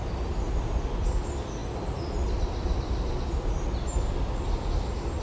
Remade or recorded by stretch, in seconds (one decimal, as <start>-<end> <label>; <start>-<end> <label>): 0.0-5.2 recorded